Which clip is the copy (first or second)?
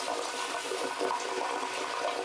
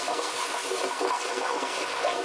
second